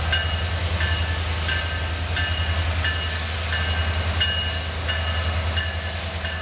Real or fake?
real